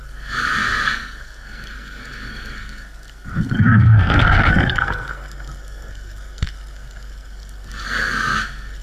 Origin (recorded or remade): remade